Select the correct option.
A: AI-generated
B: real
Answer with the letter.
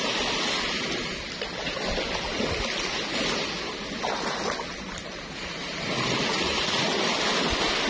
B